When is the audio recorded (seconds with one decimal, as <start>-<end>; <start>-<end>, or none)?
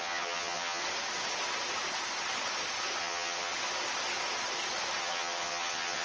0.8-3.0; 3.5-5.0